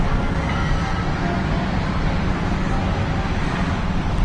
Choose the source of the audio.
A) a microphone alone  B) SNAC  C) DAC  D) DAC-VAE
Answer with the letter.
A